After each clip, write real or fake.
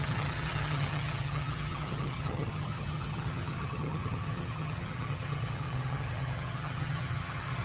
fake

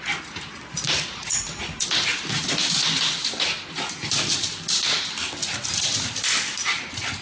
real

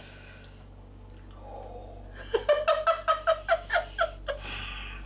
real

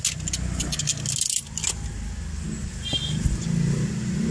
real